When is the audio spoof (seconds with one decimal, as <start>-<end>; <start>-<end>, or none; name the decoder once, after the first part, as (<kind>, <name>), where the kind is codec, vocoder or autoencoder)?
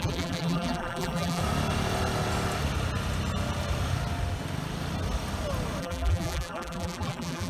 0.0-1.4 (vocoder, BigVGAN v2); 5.8-7.5